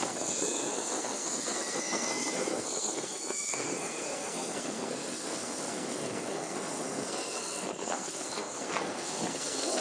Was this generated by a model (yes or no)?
yes